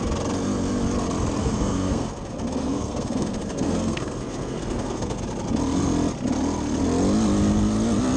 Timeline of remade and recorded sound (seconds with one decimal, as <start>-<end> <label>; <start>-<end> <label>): 0.0-1.4 recorded; 1.4-5.2 remade; 5.2-8.2 recorded